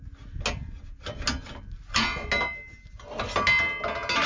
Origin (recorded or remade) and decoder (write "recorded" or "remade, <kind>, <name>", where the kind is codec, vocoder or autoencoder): recorded